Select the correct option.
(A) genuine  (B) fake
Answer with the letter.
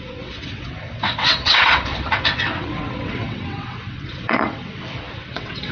B